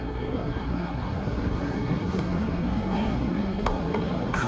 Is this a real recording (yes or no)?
no